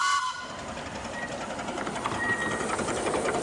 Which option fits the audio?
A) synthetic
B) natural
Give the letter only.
B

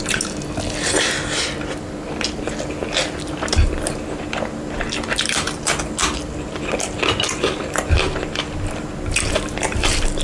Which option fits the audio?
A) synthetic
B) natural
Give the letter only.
B